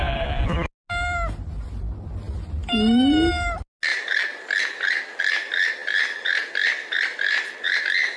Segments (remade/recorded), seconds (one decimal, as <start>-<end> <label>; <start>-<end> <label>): 0.0-8.2 recorded